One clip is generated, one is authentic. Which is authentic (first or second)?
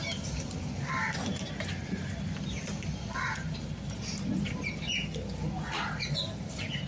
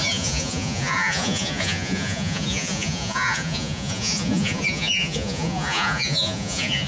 first